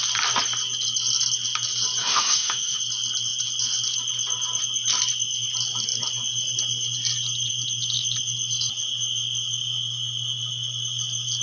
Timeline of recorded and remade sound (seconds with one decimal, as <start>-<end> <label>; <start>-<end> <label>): 0.0-2.0 recorded; 2.0-2.8 remade; 2.8-11.4 recorded

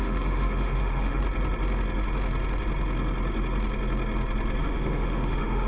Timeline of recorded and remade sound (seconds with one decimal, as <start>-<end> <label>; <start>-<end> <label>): 0.0-1.2 remade; 1.2-4.6 recorded; 4.6-5.7 remade

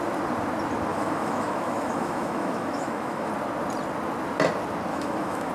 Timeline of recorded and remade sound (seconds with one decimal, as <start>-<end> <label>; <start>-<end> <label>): 0.0-0.9 recorded; 0.9-3.3 remade; 3.3-4.9 recorded; 4.9-5.5 remade

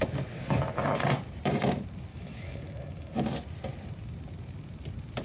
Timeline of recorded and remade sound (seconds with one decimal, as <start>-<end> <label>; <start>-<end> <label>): 0.0-2.1 recorded; 2.1-3.1 remade; 3.1-5.2 recorded

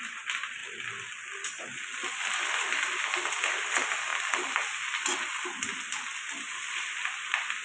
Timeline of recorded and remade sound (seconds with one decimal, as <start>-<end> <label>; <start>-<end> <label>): 0.0-7.6 recorded

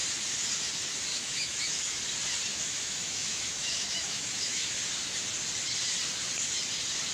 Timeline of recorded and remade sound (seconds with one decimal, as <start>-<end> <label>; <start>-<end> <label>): 0.0-1.1 recorded; 1.1-2.0 remade; 2.0-2.5 recorded; 2.5-4.7 remade; 4.7-7.1 recorded